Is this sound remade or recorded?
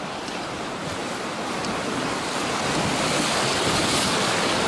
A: recorded